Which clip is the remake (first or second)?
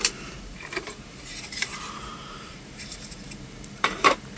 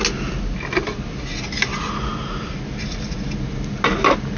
first